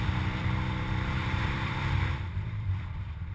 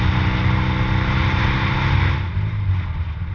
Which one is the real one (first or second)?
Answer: second